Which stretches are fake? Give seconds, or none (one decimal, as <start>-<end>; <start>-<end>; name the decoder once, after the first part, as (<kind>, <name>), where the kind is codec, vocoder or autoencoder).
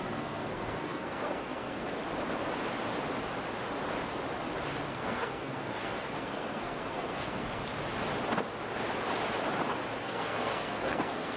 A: 0.0-2.0 (codec, SNAC); 4.9-7.6; 10.0-11.4